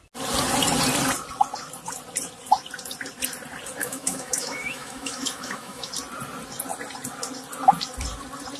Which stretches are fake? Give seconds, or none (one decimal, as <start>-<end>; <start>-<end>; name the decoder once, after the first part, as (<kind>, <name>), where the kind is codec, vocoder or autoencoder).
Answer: 3.8-5.9 (autoencoder, DAC-VAE)